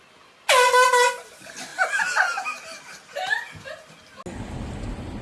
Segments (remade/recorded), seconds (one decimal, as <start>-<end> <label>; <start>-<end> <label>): 0.0-5.2 recorded